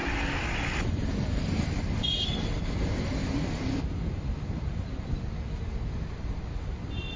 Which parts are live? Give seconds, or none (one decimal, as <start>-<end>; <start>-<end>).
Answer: 0.0-7.2